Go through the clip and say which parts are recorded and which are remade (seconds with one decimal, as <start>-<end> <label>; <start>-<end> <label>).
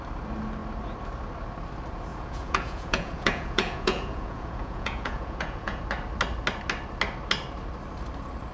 0.0-2.1 recorded; 2.1-5.8 remade; 5.8-8.5 recorded